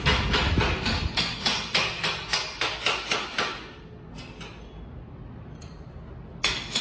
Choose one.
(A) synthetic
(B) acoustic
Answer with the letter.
B